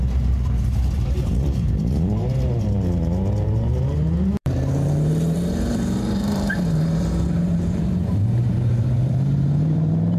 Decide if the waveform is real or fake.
fake